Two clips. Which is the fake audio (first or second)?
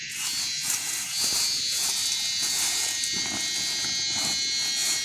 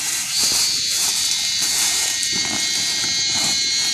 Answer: second